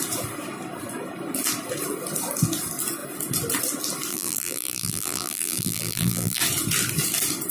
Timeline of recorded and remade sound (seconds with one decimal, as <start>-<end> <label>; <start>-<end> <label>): 0.0-4.1 recorded; 4.1-6.4 remade; 6.4-7.5 recorded